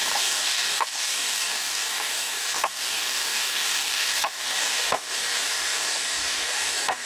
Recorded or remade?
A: remade